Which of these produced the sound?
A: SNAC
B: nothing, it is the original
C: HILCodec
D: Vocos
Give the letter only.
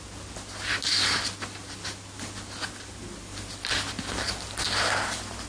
B